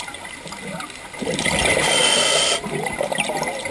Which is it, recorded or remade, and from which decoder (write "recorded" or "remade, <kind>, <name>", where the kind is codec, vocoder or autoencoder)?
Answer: recorded